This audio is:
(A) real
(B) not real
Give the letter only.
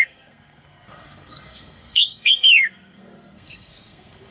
B